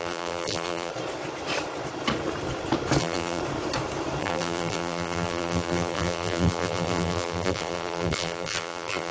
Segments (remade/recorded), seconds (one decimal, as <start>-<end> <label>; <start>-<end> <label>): 0.0-0.9 remade; 0.9-3.0 recorded; 3.0-3.4 remade; 3.4-4.2 recorded; 4.2-9.1 remade